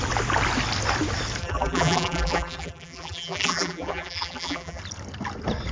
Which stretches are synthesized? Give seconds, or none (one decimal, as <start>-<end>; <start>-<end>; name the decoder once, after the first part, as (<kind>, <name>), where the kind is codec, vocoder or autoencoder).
1.4-4.8 (vocoder, BigVGAN v2)

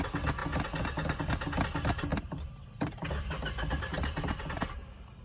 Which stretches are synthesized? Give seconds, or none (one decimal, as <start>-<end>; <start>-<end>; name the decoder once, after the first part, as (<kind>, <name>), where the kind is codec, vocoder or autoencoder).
2.1-4.4 (vocoder, BigVGAN v2)